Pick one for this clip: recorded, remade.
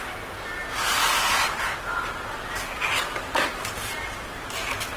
recorded